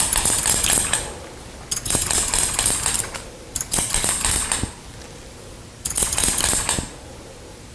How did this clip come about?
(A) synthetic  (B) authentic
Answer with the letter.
B